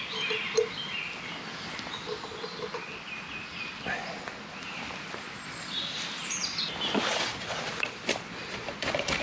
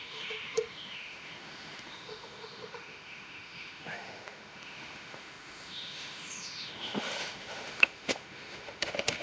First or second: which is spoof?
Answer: second